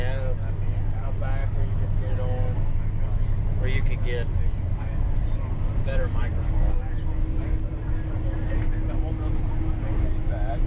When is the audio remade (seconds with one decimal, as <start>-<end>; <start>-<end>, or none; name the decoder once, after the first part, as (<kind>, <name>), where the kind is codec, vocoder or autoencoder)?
1.4-2.1 (codec, DAC)